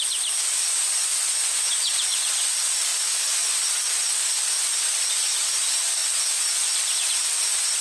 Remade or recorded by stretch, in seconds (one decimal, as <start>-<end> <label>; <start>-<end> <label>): 0.0-1.1 recorded; 1.1-2.5 remade; 2.5-4.2 recorded; 4.2-4.8 remade; 4.8-6.0 recorded; 6.0-6.7 remade; 6.7-7.8 recorded